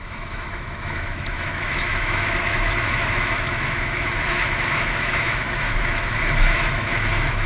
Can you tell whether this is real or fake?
fake